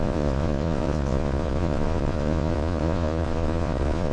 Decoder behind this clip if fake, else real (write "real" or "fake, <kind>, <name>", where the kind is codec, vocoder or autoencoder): fake, vocoder, Vocos